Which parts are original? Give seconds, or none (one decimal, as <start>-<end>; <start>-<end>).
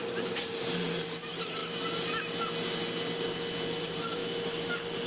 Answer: 1.6-3.8; 4.2-5.1